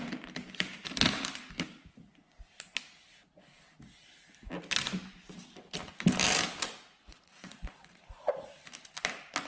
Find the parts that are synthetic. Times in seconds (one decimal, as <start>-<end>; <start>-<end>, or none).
7.0-8.5